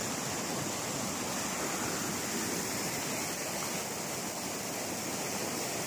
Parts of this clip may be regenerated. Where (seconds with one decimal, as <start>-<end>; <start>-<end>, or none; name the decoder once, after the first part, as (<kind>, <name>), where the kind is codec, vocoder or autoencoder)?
none